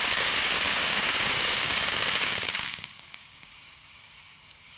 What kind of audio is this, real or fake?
fake